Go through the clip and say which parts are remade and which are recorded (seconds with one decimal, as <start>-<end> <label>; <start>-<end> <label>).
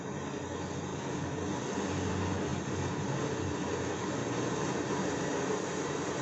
0.0-4.2 recorded; 4.2-6.2 remade